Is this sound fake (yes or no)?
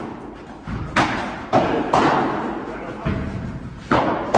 no